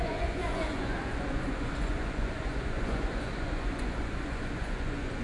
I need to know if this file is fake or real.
fake